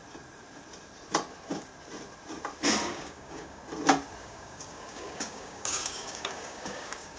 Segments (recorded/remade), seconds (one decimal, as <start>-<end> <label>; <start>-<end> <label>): 0.0-2.8 recorded; 2.8-3.6 remade; 3.6-4.2 recorded; 4.2-7.2 remade